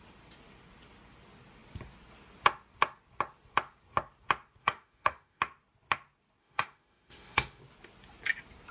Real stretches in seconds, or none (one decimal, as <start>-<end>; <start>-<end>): 0.0-4.6; 5.4-6.4; 7.6-8.7